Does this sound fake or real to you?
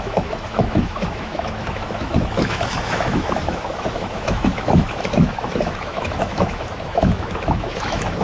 fake